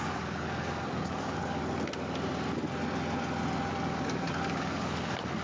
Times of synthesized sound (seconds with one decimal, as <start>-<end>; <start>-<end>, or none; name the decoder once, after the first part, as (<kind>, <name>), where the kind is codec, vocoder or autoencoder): 0.0-1.6 (codec, DAC); 3.7-5.4